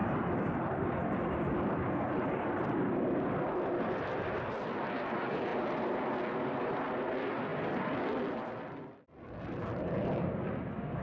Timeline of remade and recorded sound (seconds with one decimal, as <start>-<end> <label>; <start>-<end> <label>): 0.0-3.0 remade; 3.0-7.5 recorded; 7.5-11.0 remade